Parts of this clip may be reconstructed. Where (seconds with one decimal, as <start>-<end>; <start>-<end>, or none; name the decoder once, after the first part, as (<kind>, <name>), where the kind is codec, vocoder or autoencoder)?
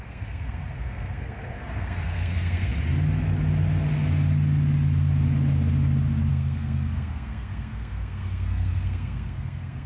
0.0-2.7 (codec, SNAC); 6.3-9.9